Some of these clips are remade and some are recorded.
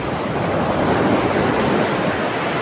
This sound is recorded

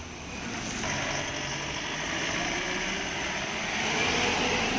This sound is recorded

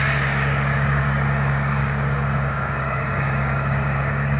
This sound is remade